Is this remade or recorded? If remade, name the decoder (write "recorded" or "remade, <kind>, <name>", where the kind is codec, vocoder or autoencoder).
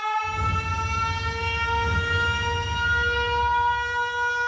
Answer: recorded